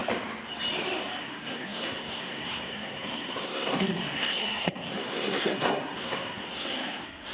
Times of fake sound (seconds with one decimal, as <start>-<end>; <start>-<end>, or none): 1.2-7.3